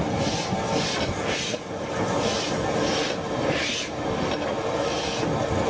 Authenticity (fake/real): real